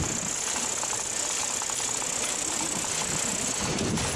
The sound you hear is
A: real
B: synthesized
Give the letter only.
A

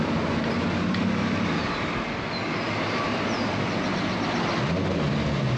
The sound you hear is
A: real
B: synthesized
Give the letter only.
A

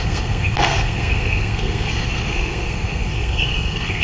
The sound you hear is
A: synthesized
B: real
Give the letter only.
A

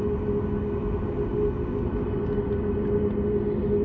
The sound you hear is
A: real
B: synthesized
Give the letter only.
A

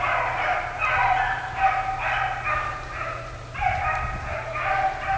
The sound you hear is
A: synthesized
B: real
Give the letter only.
B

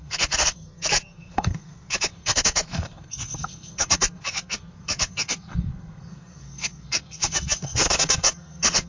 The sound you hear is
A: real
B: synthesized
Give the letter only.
B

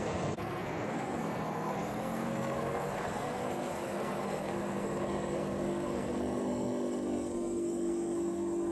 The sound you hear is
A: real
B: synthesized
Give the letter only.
B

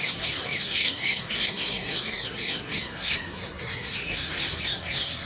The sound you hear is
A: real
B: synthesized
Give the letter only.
B